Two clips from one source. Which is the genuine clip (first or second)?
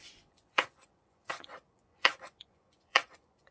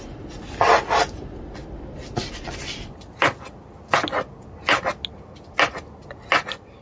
second